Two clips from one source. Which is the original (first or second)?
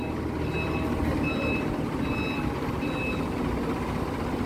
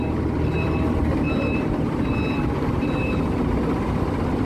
first